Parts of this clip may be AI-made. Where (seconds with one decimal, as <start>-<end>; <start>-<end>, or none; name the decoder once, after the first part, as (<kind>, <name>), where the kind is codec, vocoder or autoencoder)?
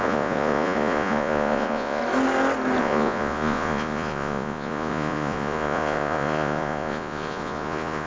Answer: 0.0-2.0 (vocoder, Vocos); 2.8-8.1